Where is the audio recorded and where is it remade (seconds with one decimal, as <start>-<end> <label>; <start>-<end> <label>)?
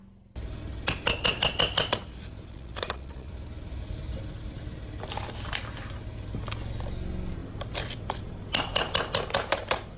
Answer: 0.0-2.5 recorded; 2.5-3.3 remade; 3.3-10.0 recorded